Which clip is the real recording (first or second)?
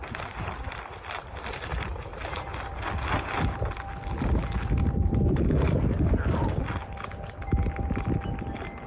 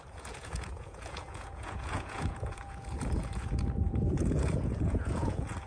first